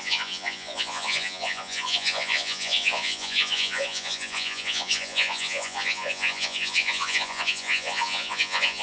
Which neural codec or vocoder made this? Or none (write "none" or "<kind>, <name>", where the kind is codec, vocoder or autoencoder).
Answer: vocoder, Vocos